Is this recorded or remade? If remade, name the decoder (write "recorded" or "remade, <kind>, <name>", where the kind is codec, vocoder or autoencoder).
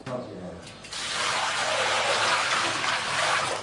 recorded